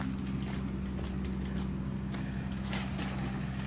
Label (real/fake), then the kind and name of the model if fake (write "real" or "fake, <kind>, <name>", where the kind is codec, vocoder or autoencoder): real